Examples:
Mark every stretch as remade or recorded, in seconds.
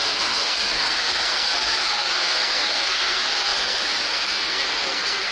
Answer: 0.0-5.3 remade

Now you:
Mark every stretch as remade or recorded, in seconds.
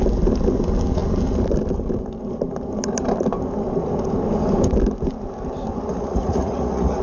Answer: 0.0-5.9 recorded; 5.9-7.0 remade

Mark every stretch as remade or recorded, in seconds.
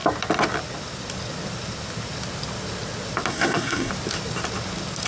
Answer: 0.0-3.3 recorded; 3.3-3.9 remade; 3.9-5.1 recorded